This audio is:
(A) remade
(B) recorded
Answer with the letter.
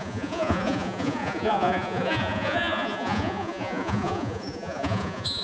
A